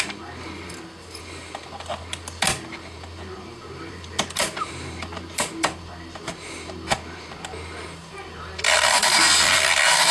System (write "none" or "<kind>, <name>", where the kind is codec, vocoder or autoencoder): vocoder, BigVGAN v2